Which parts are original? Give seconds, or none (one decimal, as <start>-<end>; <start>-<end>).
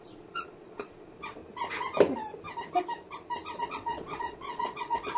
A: 1.4-3.6